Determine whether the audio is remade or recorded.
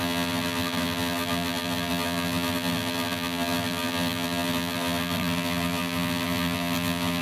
remade